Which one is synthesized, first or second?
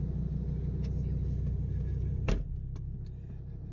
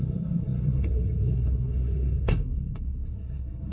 second